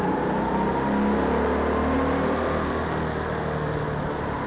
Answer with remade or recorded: recorded